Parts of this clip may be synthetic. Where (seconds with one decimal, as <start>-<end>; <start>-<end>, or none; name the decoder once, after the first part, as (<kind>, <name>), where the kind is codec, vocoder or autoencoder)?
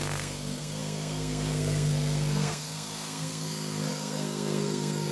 0.0-5.1 (codec, SNAC)